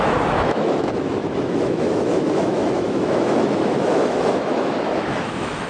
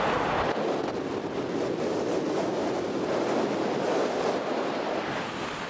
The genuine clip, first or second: second